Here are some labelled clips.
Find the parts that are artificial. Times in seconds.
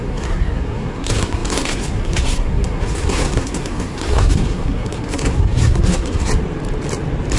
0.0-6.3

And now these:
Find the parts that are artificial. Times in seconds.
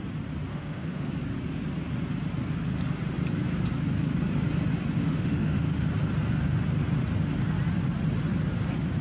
0.5-1.1; 5.0-5.9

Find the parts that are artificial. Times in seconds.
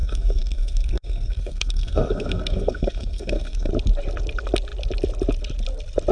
0.0-3.7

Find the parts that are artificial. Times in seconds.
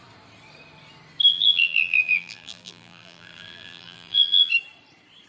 1.3-4.5